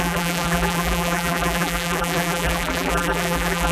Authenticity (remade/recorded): remade